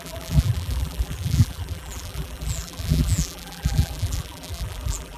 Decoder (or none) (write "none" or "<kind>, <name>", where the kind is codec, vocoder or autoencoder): vocoder, BigVGAN v2